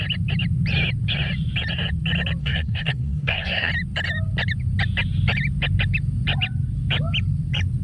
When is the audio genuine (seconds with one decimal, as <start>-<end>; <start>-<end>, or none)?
0.0-2.4; 3.7-7.8